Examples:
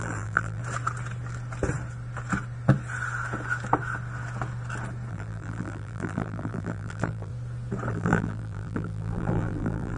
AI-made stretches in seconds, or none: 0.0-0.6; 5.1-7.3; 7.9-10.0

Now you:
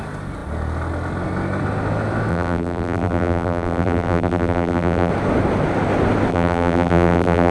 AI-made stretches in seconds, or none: 2.3-5.1; 6.3-7.5

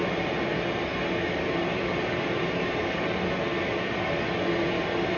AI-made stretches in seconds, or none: none

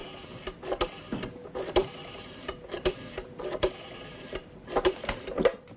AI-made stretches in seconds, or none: 1.8-5.3

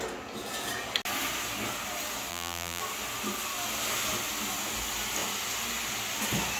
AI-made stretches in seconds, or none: 2.3-2.8

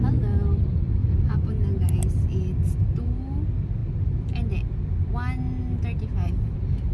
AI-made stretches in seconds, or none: 1.0-1.5

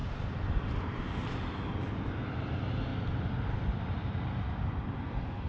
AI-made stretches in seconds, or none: none